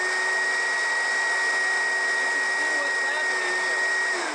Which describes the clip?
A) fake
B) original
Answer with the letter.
B